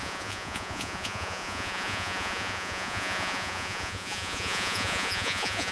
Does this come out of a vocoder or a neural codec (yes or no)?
yes